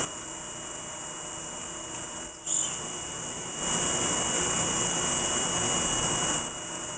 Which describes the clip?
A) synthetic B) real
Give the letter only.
B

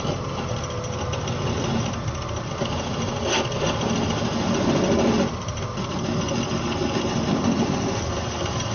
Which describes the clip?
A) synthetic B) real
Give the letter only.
B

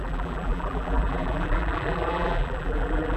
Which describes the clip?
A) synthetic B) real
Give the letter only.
A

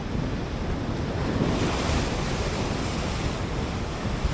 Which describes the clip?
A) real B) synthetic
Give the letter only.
A